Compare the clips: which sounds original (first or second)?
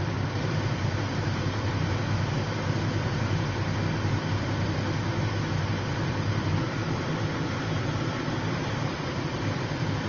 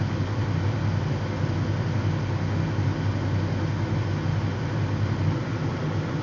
second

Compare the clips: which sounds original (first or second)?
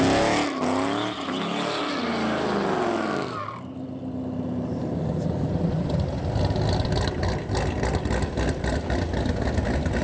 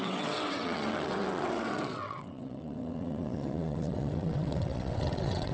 first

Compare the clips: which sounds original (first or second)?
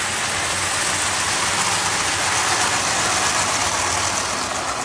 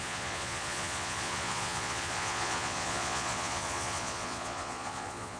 first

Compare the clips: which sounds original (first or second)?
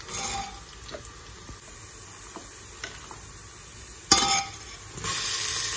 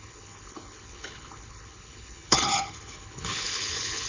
first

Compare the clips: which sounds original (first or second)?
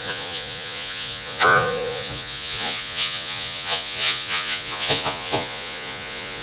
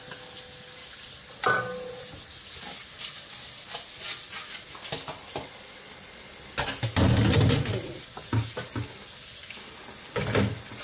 second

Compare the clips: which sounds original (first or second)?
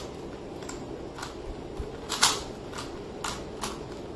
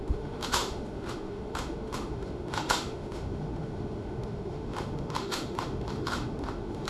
first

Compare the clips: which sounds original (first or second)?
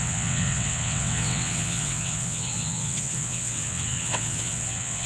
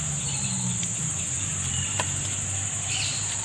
second